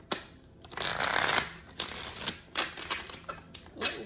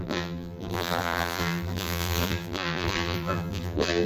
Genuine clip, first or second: first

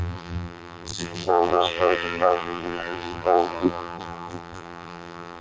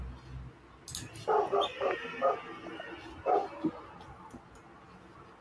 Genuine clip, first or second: second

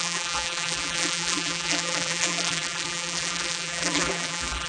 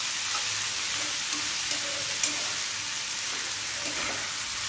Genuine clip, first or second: second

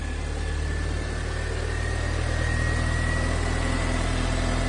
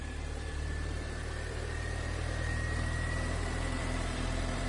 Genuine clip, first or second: first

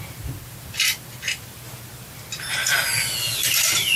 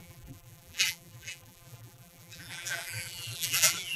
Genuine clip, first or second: first